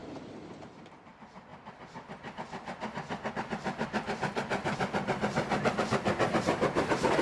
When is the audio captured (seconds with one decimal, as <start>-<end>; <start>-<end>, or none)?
0.0-0.8; 1.5-3.3; 4.6-5.8